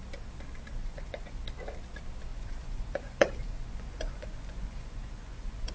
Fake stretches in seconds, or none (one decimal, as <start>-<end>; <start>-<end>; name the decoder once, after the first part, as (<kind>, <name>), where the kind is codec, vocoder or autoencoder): 0.8-1.4 (vocoder, Vocos); 2.3-5.7